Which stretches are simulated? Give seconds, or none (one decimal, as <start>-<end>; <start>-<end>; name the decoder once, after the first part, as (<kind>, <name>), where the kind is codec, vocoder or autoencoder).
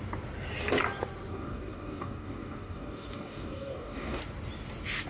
1.3-4.2 (codec, DAC)